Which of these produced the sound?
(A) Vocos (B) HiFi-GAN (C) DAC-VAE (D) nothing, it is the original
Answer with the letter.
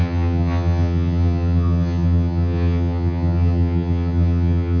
B